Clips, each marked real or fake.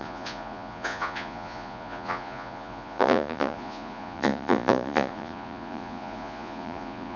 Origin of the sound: fake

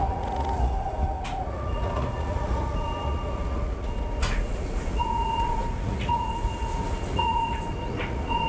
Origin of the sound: fake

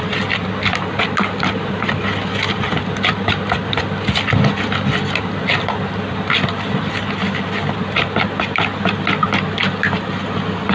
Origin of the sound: real